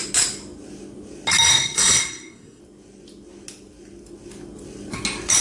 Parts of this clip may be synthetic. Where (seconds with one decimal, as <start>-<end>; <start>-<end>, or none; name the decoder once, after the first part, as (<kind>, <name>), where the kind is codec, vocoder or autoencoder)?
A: 1.5-2.6 (codec, SNAC)